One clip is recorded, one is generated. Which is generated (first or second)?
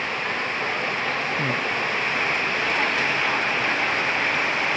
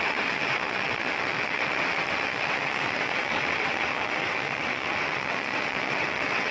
second